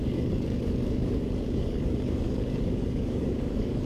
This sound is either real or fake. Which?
fake